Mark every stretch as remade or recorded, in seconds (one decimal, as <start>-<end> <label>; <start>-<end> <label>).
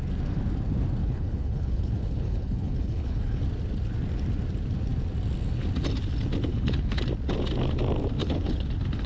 0.0-1.0 recorded; 1.0-3.4 remade; 3.4-6.5 recorded; 6.5-7.0 remade; 7.0-8.2 recorded; 8.2-8.7 remade; 8.7-9.1 recorded